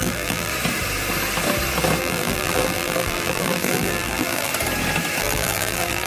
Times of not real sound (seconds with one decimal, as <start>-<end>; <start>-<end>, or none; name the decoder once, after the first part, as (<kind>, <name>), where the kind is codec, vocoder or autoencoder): 0.0-0.5 (vocoder, BigVGAN v2); 2.0-4.5; 5.2-6.1